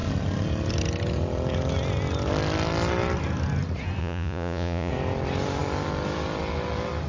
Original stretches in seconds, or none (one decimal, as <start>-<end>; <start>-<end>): 0.0-4.0; 4.9-7.1